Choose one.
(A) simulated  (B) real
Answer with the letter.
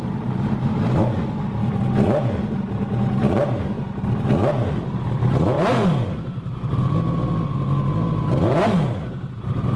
B